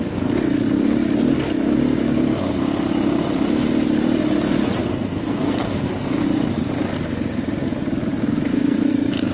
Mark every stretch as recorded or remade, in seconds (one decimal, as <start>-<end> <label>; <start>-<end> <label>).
0.0-4.9 recorded; 4.9-5.9 remade; 5.9-8.5 recorded; 8.5-9.3 remade